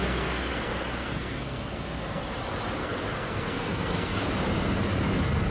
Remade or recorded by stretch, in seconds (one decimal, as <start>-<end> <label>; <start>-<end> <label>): 0.0-2.2 remade; 2.2-2.8 recorded; 2.8-4.3 remade; 4.3-5.5 recorded